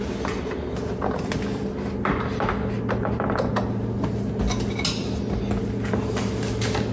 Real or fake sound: real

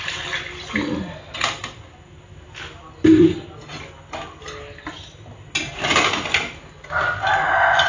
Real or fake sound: real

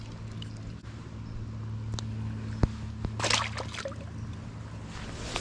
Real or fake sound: real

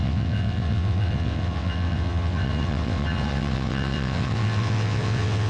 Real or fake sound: fake